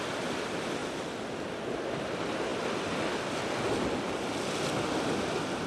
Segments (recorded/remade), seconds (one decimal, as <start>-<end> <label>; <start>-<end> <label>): 0.0-5.7 recorded